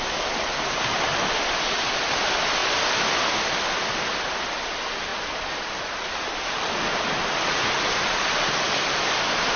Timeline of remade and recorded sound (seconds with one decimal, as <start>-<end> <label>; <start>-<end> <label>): 0.0-9.6 recorded